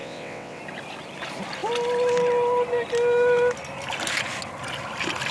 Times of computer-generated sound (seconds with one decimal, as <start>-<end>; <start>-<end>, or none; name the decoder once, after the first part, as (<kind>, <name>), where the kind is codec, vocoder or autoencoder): 0.0-0.6 (vocoder, WaveNeXt)